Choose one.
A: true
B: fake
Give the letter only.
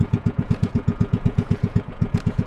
B